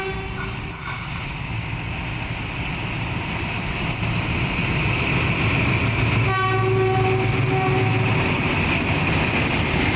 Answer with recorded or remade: recorded